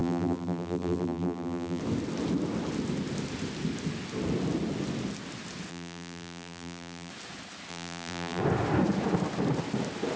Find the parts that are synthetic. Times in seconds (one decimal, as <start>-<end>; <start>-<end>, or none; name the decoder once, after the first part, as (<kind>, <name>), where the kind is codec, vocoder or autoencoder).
0.0-1.8 (vocoder, BigVGAN v2); 5.7-7.1; 7.7-8.4